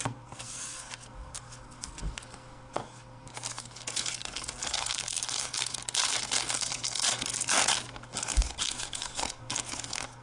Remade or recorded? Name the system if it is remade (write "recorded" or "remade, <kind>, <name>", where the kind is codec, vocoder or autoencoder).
remade, codec, SNAC